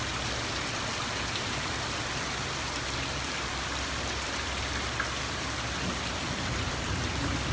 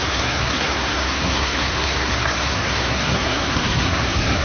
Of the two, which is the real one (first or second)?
first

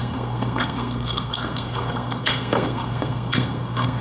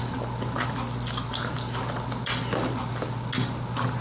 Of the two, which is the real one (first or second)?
second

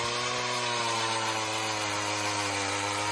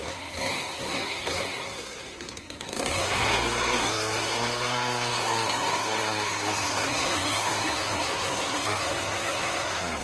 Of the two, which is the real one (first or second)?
first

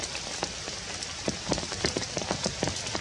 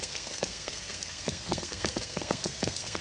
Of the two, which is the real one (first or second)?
first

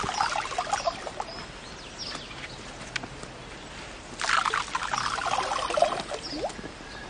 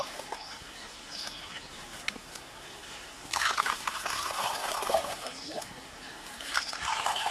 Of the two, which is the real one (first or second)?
first